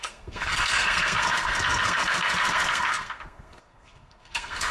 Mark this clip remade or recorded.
remade